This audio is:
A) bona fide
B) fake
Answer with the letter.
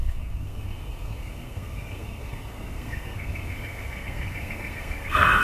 B